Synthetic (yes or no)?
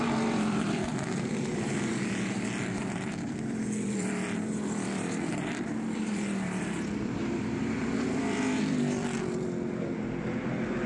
yes